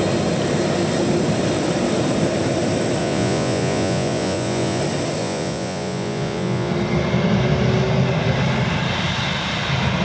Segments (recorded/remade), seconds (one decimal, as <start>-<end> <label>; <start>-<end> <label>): 0.0-3.0 recorded; 3.0-4.8 remade; 4.8-5.2 recorded; 5.2-6.7 remade; 6.7-10.0 recorded